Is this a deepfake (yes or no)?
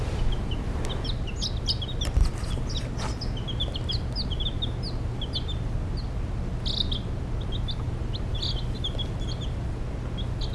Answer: no